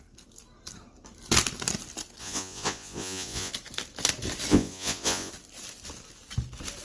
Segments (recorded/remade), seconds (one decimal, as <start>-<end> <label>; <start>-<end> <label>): 0.0-2.2 recorded; 2.2-3.5 remade; 3.5-4.5 recorded; 4.5-5.3 remade; 5.3-6.8 recorded